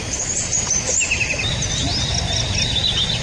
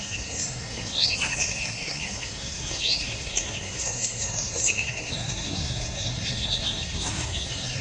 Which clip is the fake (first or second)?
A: second